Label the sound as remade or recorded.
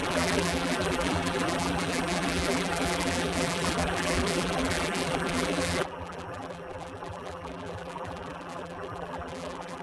remade